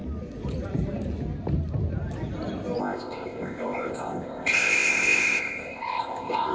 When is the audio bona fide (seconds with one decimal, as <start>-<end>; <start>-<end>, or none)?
0.0-2.8